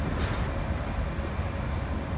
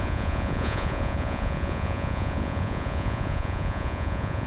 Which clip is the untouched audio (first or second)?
first